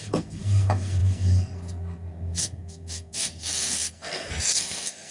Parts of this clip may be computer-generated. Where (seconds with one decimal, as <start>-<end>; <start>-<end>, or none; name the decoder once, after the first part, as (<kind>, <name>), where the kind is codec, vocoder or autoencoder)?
0.0-5.1 (codec, SNAC)